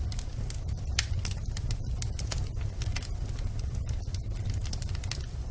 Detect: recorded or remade recorded